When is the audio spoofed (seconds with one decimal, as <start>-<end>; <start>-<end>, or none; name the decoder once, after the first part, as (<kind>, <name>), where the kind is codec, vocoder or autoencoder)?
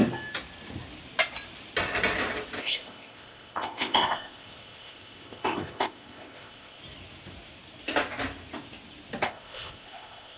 2.6-6.8 (codec, ZipCodec); 9.2-10.4